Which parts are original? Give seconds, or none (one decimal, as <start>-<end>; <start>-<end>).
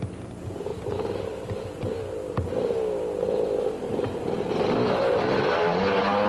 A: 0.0-6.3